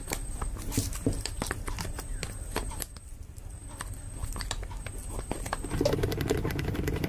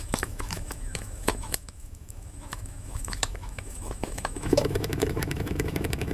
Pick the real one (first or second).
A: first